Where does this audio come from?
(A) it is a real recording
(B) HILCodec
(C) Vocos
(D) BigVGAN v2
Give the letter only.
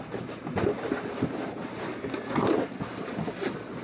A